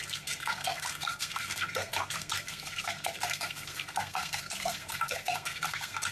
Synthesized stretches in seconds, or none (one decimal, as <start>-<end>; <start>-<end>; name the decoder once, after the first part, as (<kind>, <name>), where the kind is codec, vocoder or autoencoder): 0.0-6.1 (codec, SNAC)